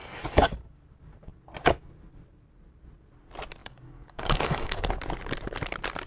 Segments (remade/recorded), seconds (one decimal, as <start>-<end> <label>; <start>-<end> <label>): 0.0-0.6 remade; 0.6-3.6 recorded; 3.6-4.9 remade; 4.9-6.1 recorded